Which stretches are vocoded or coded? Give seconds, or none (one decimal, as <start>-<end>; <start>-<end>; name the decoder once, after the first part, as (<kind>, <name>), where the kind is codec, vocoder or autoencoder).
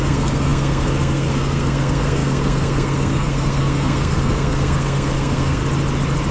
0.0-5.6 (codec, SNAC)